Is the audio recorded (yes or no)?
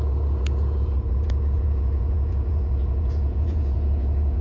no